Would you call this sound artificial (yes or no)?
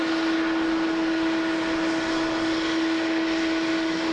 no